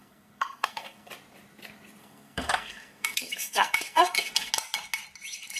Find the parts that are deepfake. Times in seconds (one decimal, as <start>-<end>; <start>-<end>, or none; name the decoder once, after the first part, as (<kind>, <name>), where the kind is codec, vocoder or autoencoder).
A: 0.0-1.1 (codec, SNAC); 2.0-4.5